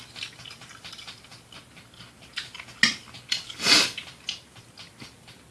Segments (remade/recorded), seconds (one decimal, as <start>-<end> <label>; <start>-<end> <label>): 0.0-5.5 recorded